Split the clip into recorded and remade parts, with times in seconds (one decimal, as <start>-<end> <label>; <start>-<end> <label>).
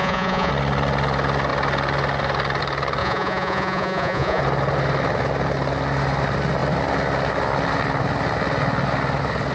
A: 0.0-0.5 remade; 0.5-3.0 recorded; 3.0-4.4 remade; 4.4-9.5 recorded